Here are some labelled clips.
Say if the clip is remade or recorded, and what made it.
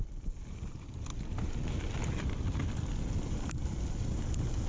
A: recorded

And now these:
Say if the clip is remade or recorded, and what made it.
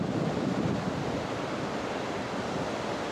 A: recorded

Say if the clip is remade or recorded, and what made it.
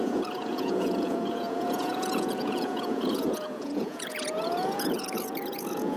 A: remade, vocoder, Vocos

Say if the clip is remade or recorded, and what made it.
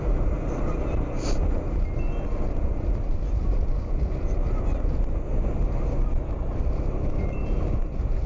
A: recorded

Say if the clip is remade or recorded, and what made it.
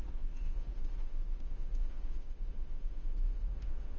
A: remade, autoencoder, DAC-VAE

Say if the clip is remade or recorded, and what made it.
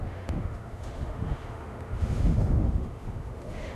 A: remade, autoencoder, DAC-VAE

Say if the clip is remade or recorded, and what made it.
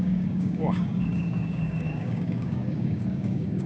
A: remade, codec, DAC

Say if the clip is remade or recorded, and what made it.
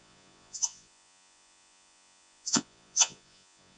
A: remade, vocoder, Vocos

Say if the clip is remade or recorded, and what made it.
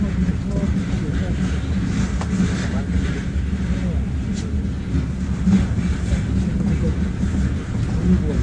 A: recorded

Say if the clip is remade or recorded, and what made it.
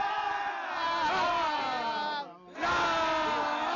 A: recorded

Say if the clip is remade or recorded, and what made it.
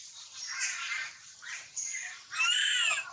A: remade, vocoder, BigVGAN v2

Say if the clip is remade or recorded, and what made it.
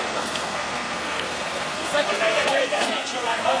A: remade, codec, SNAC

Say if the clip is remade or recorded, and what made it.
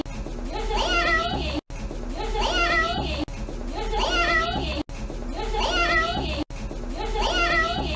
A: recorded